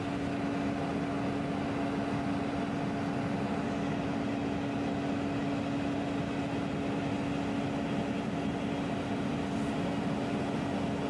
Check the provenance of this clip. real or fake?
real